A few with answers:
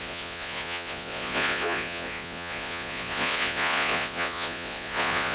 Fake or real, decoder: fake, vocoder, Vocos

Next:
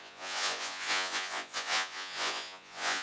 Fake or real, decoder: fake, vocoder, Vocos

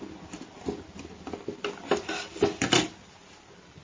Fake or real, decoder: real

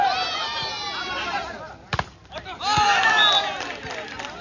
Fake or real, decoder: real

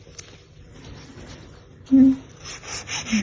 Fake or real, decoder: real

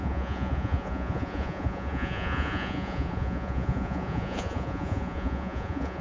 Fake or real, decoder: fake, vocoder, Vocos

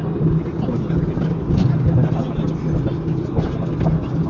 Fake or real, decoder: real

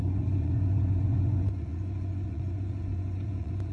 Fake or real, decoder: fake, vocoder, Vocos